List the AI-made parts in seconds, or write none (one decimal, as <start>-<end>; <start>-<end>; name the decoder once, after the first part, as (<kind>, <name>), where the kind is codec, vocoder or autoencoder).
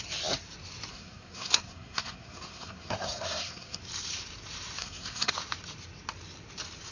0.9-3.8 (codec, SNAC); 4.8-5.3